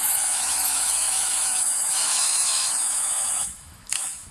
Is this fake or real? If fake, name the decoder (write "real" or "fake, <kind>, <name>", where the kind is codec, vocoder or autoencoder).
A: fake, autoencoder, DAC-VAE